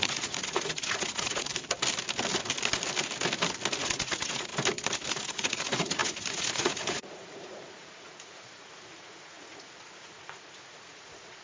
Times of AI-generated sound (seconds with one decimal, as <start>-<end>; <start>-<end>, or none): 0.0-1.5; 3.8-4.5; 5.1-11.4